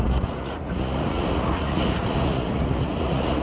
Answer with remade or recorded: remade